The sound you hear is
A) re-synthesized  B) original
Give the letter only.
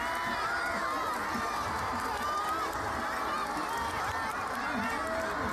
B